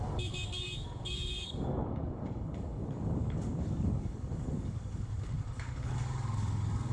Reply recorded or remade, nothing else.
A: remade